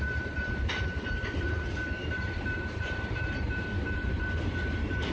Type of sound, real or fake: fake